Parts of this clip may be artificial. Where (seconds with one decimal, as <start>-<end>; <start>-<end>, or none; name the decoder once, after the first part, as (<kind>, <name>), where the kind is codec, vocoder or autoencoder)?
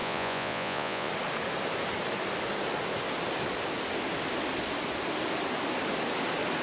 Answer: 0.0-1.1 (vocoder, Vocos)